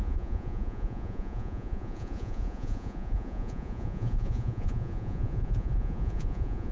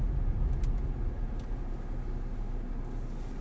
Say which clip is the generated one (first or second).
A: first